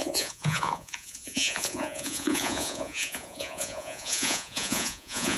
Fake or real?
fake